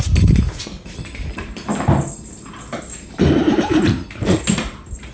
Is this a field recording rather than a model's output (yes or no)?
yes